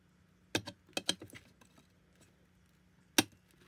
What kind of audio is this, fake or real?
real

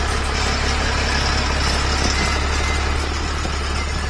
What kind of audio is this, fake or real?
real